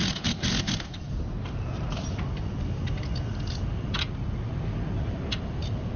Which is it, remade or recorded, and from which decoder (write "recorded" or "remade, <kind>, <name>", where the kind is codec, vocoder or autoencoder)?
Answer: recorded